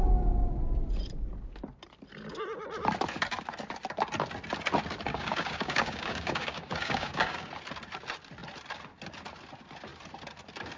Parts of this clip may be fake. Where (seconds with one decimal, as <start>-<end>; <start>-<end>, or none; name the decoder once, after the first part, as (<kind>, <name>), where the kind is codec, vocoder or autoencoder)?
5.1-7.5 (codec, DAC)